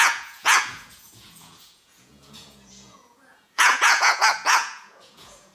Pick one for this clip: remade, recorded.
remade